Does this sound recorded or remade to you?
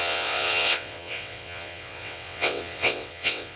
remade